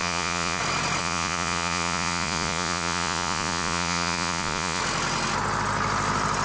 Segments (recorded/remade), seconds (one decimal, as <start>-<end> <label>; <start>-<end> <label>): 0.0-0.6 remade; 0.6-1.0 recorded; 1.0-4.8 remade; 4.8-6.4 recorded